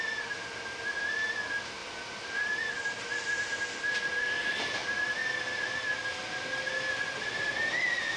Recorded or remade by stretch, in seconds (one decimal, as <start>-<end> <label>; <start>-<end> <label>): 0.0-8.2 recorded